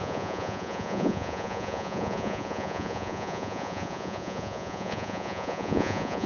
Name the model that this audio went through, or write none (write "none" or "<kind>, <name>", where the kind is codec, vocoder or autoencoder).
vocoder, Vocos